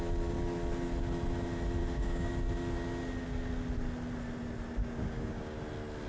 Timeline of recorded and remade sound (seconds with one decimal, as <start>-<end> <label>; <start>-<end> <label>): 0.0-1.8 recorded; 1.8-2.3 remade; 2.3-4.8 recorded; 4.8-5.6 remade; 5.6-6.1 recorded

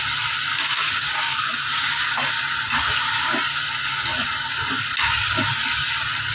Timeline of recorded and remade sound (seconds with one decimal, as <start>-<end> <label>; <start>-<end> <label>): 0.0-0.5 recorded; 0.5-2.3 remade; 2.3-6.3 recorded

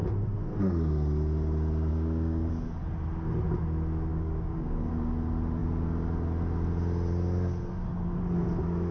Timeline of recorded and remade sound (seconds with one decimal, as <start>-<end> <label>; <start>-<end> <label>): 0.0-1.9 recorded; 1.9-2.5 remade; 2.5-4.1 recorded; 4.1-4.9 remade; 4.9-8.9 recorded